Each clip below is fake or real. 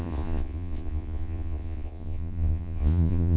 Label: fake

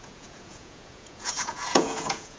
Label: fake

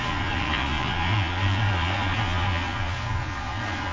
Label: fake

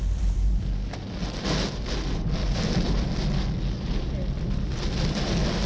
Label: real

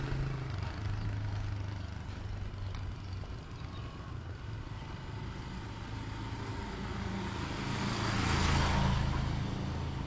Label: real